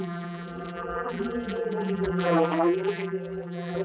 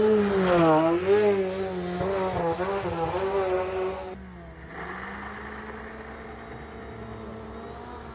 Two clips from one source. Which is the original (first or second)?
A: second